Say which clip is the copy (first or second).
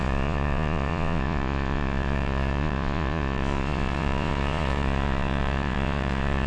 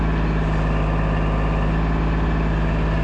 first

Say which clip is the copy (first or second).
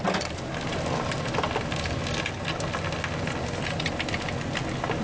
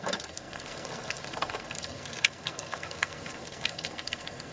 second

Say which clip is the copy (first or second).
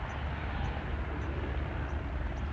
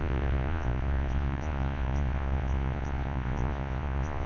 second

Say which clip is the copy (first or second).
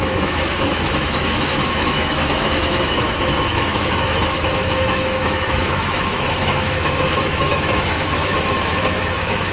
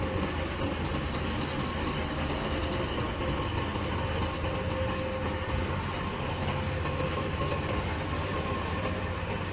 first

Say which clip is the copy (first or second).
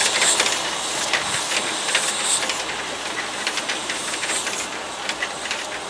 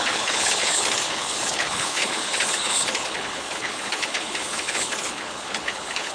second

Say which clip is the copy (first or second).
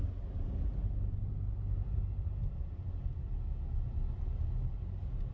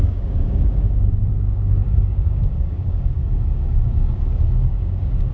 second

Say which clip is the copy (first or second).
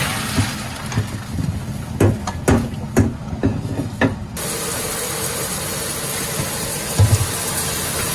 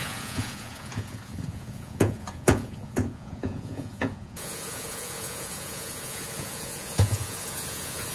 second